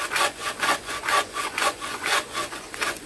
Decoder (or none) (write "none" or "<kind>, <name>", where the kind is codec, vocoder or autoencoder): vocoder, Vocos